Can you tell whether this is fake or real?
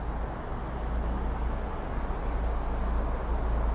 real